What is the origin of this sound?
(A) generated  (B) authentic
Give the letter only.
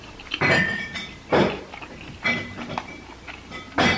B